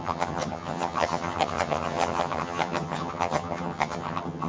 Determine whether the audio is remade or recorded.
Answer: remade